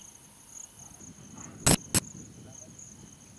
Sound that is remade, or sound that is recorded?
recorded